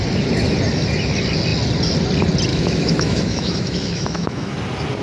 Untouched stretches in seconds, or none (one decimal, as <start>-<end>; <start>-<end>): 0.0-2.5; 4.5-5.0